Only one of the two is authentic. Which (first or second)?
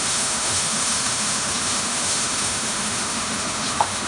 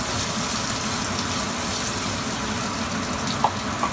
second